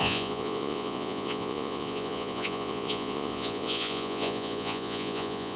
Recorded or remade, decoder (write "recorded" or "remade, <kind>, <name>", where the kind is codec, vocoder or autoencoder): remade, vocoder, Vocos